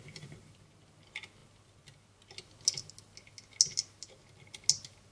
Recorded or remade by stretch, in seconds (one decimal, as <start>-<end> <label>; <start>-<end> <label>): 0.0-5.1 recorded